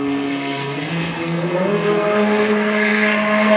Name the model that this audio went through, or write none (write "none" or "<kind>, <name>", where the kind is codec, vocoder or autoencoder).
codec, SNAC